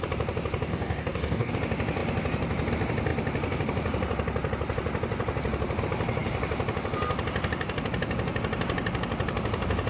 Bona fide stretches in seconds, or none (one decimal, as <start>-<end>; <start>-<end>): 0.0-0.7; 1.5-9.9